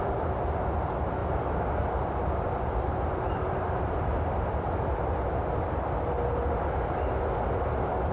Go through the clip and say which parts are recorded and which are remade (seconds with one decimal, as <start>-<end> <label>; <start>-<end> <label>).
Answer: 0.0-1.2 recorded; 1.2-6.0 remade; 6.0-8.1 recorded